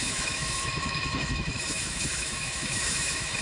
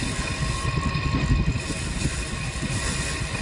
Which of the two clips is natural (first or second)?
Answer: second